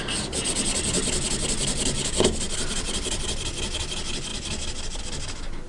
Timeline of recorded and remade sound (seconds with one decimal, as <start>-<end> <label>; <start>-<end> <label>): 0.0-5.7 recorded

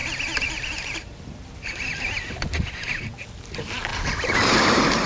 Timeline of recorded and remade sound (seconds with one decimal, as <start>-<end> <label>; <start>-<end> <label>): 0.0-5.1 recorded

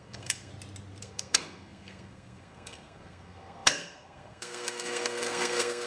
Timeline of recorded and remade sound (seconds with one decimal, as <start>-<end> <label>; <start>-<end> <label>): 0.0-0.5 remade; 0.5-1.0 recorded; 1.0-5.9 remade

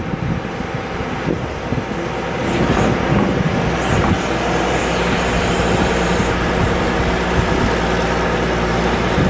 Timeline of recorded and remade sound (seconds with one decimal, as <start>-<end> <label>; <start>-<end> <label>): 0.0-9.3 recorded